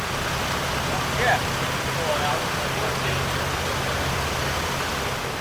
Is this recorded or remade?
recorded